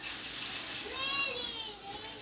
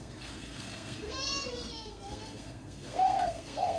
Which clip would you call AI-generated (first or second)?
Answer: second